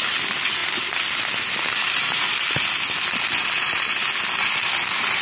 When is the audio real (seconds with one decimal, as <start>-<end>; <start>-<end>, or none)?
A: 0.0-5.2